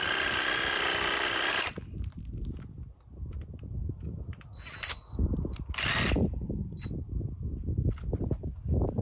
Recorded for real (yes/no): yes